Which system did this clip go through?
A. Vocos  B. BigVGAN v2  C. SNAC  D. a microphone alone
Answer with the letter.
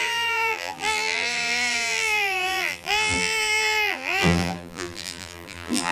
B